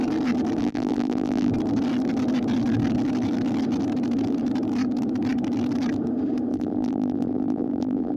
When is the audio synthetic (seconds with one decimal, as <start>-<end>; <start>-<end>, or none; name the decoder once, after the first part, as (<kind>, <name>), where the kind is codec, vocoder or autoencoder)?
0.6-1.5 (vocoder, BigVGAN v2); 6.5-8.2